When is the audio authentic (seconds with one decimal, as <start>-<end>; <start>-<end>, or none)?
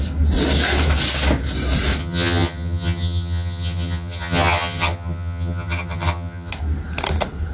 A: 0.0-2.0; 6.5-7.5